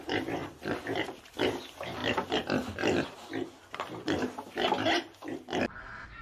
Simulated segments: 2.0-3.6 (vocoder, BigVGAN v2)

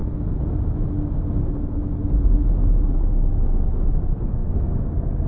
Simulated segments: none

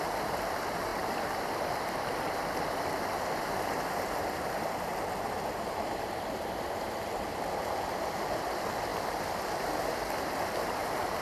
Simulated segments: 0.0-7.3 (vocoder, BigVGAN v2); 8.0-8.9; 10.5-11.2

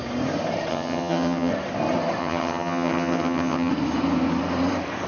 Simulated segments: 0.7-1.5 (vocoder, HiFi-GAN); 2.2-3.7